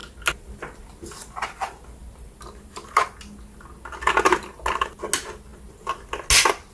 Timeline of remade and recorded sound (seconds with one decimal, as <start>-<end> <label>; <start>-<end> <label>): 0.0-6.7 recorded